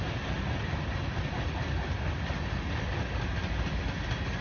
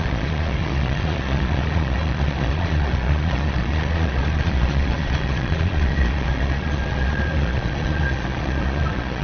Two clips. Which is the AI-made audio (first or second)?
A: second